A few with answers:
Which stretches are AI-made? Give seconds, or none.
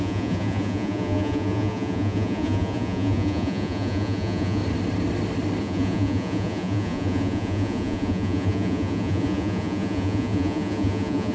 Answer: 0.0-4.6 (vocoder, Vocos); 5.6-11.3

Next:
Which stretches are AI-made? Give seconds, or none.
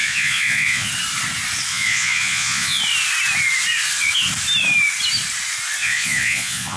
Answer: 0.0-0.9 (vocoder, Vocos); 1.7-2.8; 5.8-6.8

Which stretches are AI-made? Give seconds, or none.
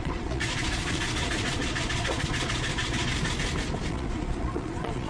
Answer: 0.0-3.1 (vocoder, Vocos); 3.9-5.1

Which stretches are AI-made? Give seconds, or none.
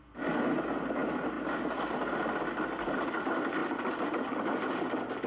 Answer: none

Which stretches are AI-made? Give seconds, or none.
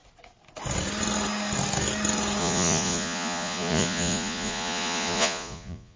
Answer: 2.4-6.0 (vocoder, Vocos)